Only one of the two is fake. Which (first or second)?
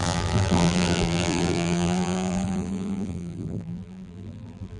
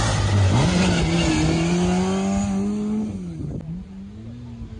first